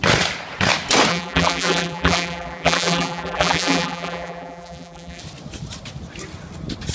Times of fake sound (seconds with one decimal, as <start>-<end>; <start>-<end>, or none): 1.1-5.2